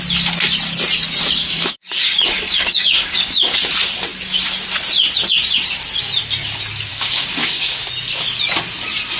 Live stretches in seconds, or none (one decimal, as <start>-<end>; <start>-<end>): 0.0-1.4; 3.5-6.9; 7.8-9.2